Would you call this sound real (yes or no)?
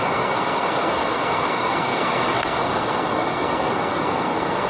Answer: no